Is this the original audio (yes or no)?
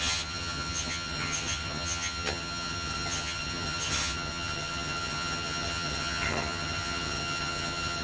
no